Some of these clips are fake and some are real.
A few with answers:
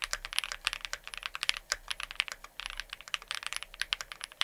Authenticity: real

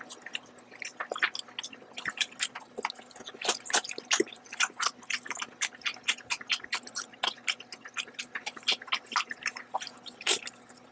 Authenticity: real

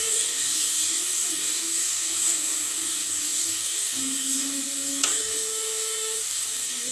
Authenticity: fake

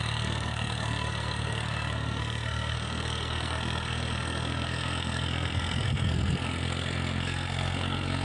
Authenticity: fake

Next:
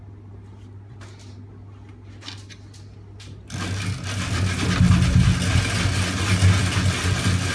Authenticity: real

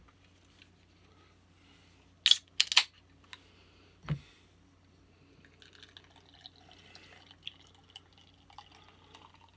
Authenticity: real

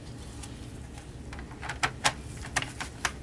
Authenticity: real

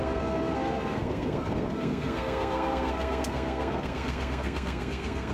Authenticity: fake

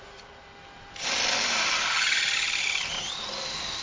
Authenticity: fake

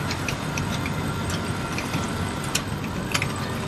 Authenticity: fake